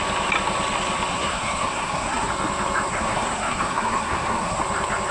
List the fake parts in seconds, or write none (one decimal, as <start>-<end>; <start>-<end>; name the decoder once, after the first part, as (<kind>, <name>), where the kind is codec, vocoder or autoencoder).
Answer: 1.1-2.3 (codec, SNAC); 2.9-4.6